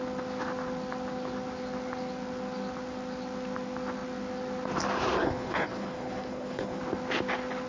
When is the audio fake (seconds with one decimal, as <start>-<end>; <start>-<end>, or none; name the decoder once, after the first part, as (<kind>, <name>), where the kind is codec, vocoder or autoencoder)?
5.2-6.8 (codec, HILCodec)